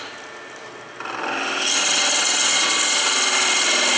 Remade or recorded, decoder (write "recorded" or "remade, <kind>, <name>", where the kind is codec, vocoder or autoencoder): recorded